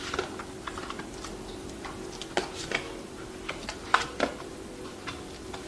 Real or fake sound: real